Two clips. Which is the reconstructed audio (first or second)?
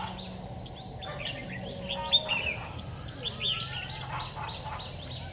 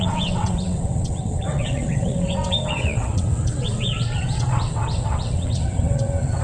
second